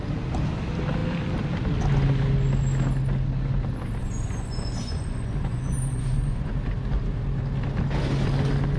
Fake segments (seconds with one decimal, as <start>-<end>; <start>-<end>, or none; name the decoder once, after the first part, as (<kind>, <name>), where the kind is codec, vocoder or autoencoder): 4.0-6.5 (vocoder, Vocos)